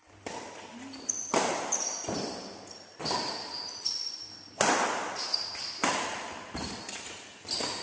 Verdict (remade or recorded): recorded